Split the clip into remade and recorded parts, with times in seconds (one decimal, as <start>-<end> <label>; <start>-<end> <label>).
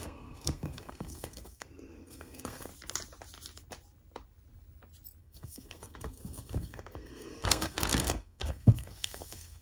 0.0-2.7 remade; 2.7-5.2 recorded; 5.2-9.6 remade